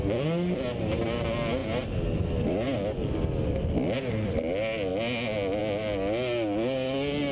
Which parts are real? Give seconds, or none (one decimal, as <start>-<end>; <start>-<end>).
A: 0.0-7.3